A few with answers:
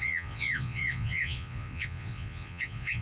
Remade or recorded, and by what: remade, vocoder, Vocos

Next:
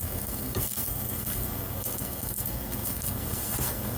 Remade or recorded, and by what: remade, codec, SNAC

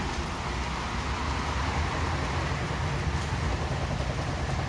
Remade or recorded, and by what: recorded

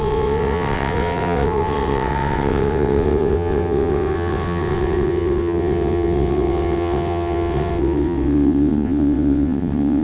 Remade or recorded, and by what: remade, vocoder, WaveNeXt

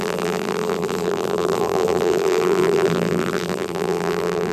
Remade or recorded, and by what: remade, vocoder, BigVGAN v2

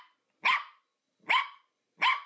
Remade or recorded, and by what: recorded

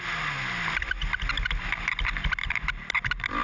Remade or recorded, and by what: recorded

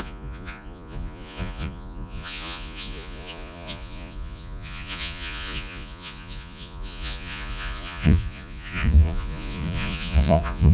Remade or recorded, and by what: remade, vocoder, Vocos